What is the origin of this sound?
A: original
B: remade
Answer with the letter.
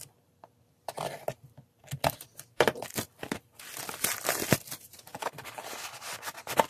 B